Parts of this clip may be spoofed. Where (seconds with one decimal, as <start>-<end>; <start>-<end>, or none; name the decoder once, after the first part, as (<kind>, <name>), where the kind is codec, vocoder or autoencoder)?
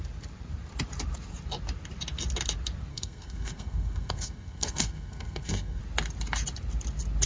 2.9-5.8 (codec, SNAC)